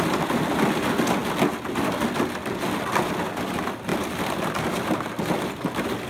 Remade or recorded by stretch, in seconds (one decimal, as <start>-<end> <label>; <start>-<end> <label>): 0.0-6.1 recorded